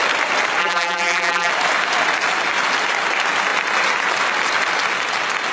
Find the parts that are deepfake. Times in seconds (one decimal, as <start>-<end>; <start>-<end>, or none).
0.6-1.5